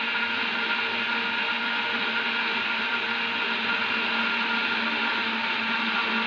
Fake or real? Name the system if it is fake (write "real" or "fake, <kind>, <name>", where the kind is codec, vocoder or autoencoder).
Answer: real